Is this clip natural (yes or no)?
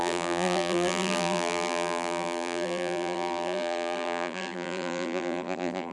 no